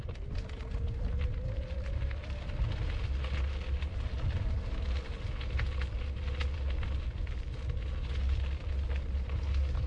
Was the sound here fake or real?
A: real